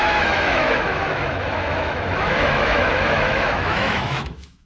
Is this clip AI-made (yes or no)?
yes